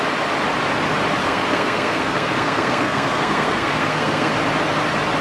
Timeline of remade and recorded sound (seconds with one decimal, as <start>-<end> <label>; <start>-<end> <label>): 0.0-1.2 recorded; 1.2-4.3 remade; 4.3-5.2 recorded